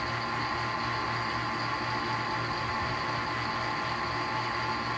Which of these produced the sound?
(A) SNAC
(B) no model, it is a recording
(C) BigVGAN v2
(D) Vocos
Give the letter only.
B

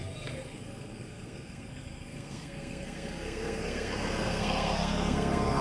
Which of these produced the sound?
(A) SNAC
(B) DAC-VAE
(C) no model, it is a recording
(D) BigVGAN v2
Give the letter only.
A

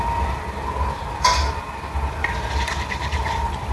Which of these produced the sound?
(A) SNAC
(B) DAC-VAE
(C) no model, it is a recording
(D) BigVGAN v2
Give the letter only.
D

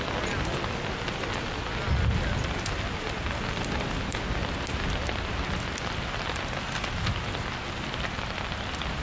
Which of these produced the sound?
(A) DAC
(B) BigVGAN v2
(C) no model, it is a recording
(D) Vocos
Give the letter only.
C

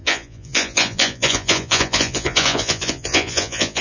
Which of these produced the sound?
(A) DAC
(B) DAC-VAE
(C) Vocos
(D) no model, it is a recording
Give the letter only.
C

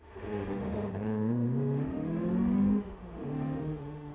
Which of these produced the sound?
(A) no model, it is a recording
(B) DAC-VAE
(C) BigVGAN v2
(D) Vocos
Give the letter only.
B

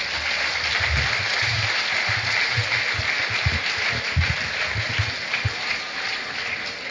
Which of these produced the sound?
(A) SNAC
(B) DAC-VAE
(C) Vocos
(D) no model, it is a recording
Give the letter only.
D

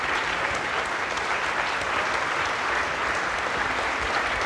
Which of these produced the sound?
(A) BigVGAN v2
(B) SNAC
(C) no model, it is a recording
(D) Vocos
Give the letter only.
C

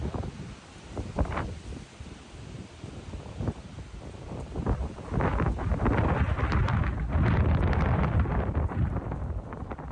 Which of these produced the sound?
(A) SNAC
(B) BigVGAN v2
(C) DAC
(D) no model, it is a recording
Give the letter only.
B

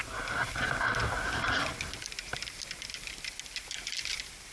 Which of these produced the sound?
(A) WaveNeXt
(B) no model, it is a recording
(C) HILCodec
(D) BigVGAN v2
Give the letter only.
B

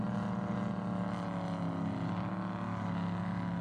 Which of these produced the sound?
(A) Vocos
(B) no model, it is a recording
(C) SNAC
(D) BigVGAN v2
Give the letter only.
B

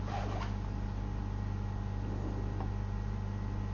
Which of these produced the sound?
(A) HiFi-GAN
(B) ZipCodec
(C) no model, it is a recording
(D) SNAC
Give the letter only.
C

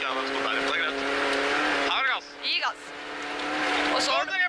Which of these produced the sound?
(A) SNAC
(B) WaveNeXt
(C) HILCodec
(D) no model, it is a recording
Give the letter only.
D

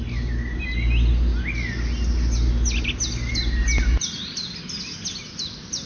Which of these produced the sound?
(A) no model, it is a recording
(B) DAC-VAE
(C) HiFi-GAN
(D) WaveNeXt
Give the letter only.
A